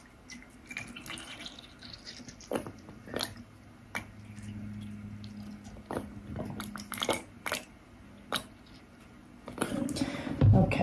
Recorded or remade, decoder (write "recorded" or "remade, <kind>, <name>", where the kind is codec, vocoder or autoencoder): recorded